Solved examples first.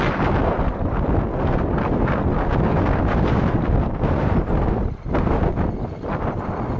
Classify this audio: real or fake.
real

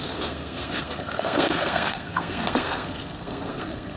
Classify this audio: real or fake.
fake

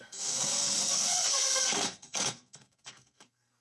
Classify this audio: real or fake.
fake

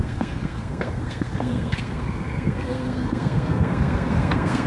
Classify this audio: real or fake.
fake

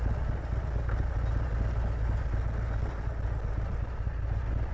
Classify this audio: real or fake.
real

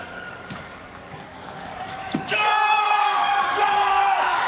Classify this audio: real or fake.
fake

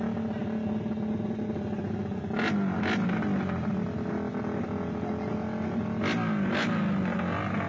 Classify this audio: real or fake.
real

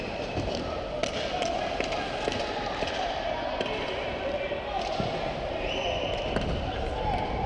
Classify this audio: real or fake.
real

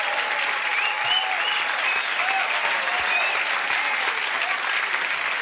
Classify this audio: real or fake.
real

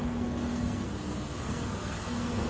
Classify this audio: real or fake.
fake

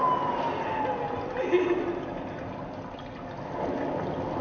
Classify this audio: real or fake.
real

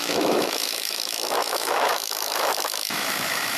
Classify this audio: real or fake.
fake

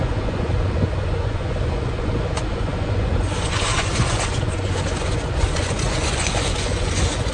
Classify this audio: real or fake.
fake